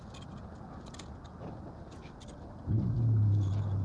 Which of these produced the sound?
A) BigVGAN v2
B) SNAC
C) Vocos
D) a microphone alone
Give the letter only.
D